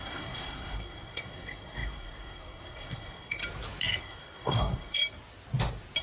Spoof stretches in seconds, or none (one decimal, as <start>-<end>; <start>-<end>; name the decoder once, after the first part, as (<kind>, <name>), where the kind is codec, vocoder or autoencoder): 0.0-3.4 (codec, SNAC); 4.0-5.0